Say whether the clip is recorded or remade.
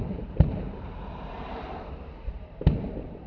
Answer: remade